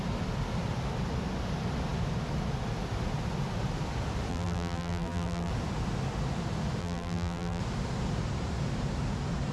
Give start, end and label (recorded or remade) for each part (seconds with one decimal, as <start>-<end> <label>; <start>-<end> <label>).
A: 0.0-4.3 recorded; 4.3-5.5 remade; 5.5-6.8 recorded; 6.8-7.6 remade; 7.6-9.5 recorded